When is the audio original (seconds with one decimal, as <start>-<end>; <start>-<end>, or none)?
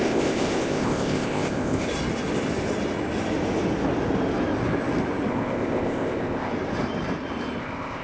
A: 1.9-5.3; 6.5-7.6